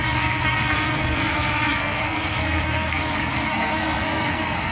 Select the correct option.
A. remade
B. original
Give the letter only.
A